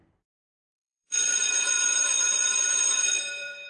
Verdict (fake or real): fake